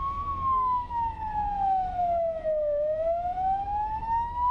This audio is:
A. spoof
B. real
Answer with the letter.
A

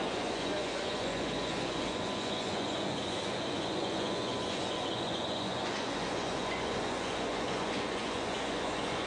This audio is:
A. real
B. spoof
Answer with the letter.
B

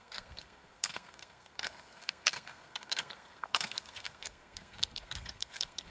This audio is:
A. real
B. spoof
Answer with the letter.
B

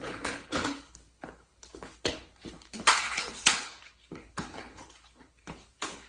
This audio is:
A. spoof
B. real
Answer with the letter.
A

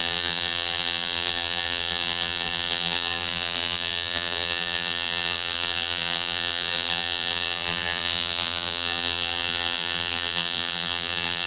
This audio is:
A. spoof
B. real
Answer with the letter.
A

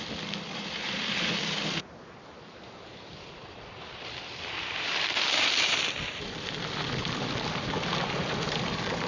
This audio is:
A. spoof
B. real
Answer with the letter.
A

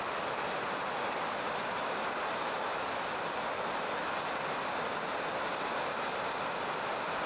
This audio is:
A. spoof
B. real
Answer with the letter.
B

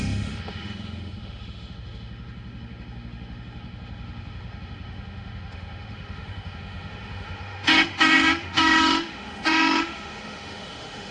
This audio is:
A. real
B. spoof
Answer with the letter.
B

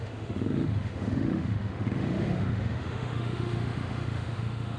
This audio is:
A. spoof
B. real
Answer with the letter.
A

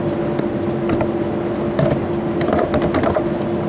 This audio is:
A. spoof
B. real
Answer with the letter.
B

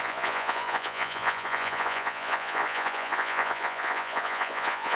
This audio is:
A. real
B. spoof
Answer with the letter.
B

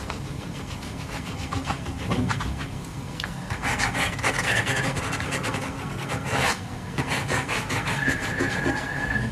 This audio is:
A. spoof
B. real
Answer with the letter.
A